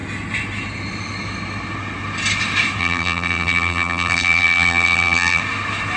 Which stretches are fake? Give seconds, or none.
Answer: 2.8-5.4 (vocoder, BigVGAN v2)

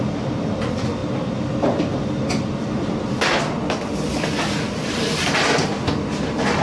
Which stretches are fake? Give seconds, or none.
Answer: none